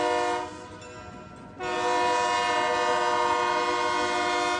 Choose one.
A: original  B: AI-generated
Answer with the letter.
A